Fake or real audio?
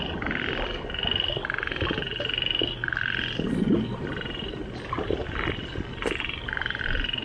real